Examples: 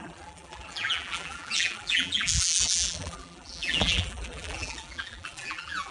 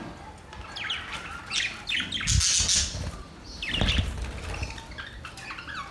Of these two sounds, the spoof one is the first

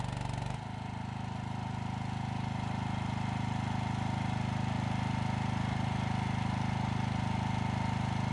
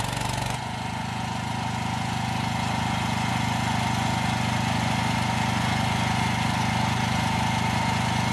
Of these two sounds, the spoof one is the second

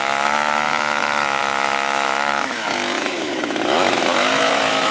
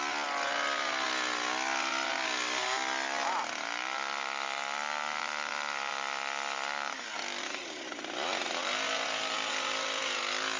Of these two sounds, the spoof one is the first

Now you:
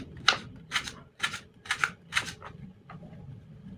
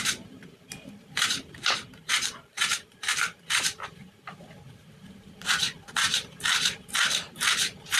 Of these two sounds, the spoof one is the second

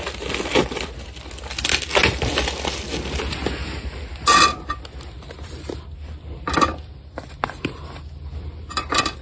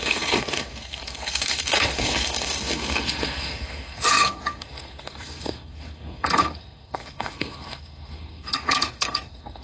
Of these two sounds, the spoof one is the second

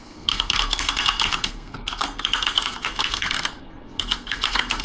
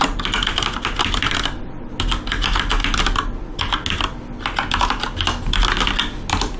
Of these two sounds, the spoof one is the first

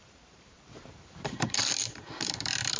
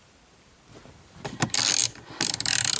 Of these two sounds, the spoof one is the first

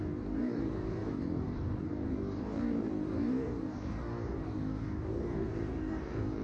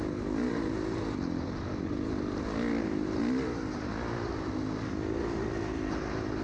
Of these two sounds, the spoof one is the first